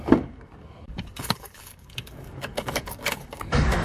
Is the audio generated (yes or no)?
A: yes